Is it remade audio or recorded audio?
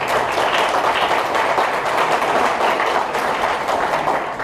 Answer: recorded